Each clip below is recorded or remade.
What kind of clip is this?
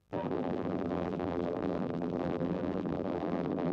remade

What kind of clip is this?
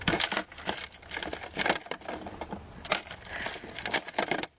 recorded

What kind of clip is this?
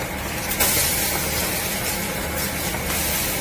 recorded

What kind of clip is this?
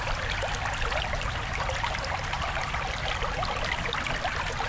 remade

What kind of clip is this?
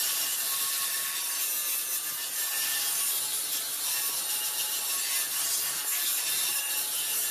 recorded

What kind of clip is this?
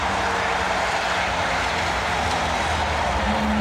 remade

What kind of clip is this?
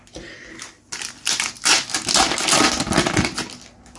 recorded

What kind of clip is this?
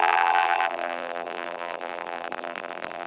remade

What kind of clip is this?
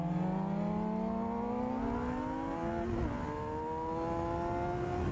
recorded